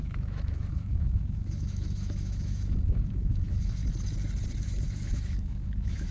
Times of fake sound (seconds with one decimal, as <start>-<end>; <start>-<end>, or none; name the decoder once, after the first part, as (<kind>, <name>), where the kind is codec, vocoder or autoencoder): 0.0-3.8 (autoencoder, DAC-VAE); 4.6-6.1